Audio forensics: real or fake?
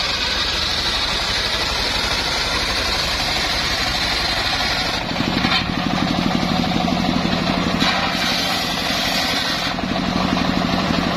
real